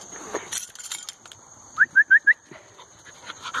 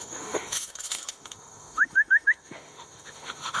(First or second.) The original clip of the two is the first